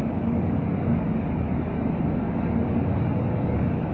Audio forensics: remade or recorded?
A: remade